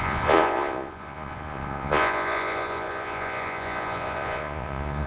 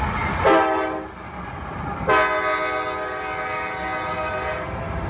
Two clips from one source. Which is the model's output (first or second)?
first